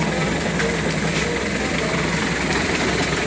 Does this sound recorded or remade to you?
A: recorded